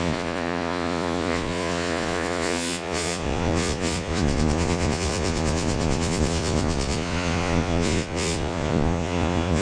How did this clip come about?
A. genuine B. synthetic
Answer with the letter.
B